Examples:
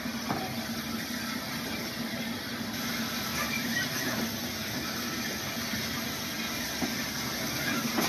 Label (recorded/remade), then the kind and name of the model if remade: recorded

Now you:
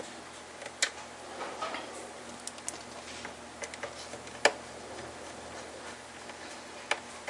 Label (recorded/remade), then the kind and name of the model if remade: recorded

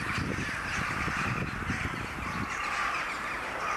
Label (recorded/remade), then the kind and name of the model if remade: remade, vocoder, BigVGAN v2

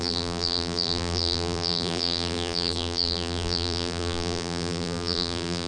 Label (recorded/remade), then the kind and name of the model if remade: remade, vocoder, BigVGAN v2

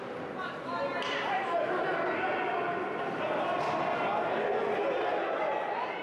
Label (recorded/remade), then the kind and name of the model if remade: recorded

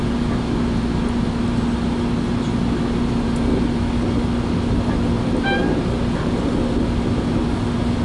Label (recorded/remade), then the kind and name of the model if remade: recorded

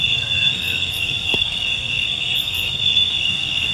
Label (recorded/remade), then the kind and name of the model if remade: remade, codec, SNAC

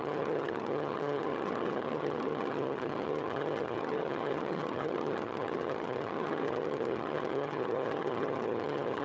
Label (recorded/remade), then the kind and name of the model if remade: remade, vocoder, HiFi-GAN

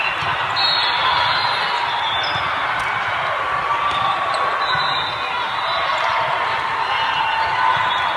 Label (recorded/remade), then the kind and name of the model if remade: recorded